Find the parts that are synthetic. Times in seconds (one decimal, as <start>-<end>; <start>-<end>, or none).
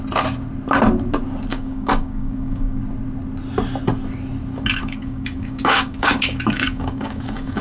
1.5-2.8; 4.8-7.6